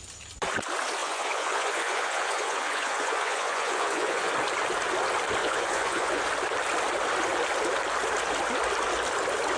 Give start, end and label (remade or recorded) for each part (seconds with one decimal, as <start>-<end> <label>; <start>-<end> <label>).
0.0-1.0 recorded; 1.0-4.3 remade; 4.3-5.4 recorded; 5.4-6.2 remade; 6.2-9.6 recorded